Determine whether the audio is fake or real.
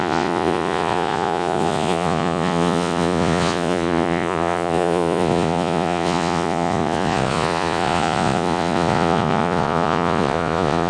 fake